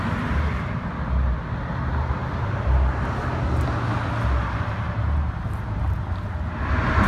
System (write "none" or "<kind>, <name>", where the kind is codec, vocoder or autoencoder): none